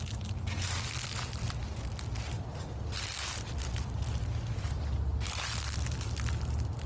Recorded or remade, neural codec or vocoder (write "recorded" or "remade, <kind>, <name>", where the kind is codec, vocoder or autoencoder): recorded